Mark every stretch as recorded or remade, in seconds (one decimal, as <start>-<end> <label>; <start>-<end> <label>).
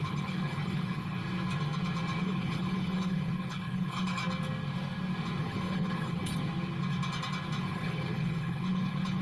0.0-1.2 remade; 1.2-2.2 recorded; 2.2-4.2 remade; 4.2-5.4 recorded; 5.4-6.3 remade; 6.3-7.6 recorded; 7.6-9.2 remade